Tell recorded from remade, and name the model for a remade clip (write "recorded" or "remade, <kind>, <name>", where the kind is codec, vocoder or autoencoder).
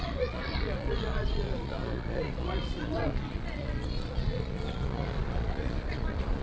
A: remade, vocoder, Vocos